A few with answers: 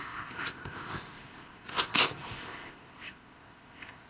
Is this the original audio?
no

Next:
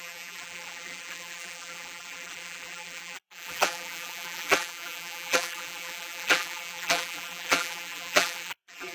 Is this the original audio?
no